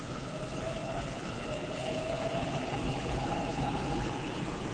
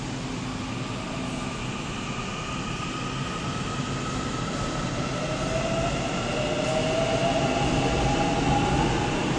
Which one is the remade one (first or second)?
first